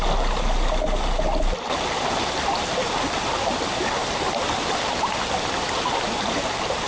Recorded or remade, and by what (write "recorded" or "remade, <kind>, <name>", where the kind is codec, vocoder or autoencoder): recorded